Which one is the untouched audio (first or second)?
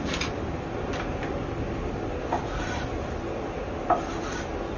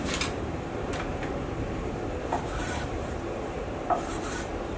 first